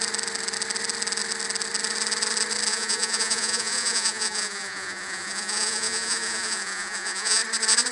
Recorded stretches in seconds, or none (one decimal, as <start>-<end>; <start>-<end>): 0.0-2.7; 7.4-7.9